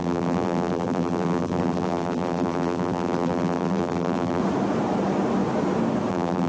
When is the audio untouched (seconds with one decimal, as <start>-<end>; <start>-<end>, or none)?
4.4-6.1